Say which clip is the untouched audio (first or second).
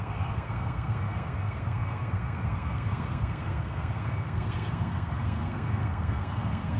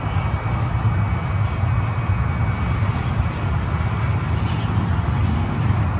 second